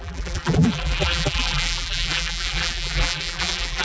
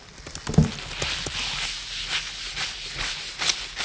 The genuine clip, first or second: second